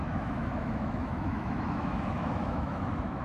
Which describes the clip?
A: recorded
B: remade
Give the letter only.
B